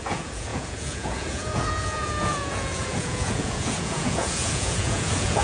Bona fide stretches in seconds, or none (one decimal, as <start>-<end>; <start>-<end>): none